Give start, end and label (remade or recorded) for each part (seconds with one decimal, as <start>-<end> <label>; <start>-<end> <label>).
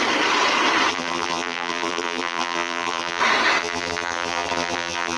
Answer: 0.0-0.9 recorded; 0.9-3.2 remade; 3.2-3.6 recorded; 3.6-5.2 remade